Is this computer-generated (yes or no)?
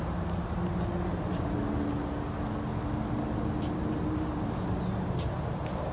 no